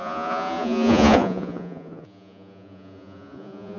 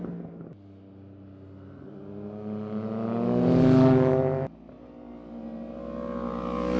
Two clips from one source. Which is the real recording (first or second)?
second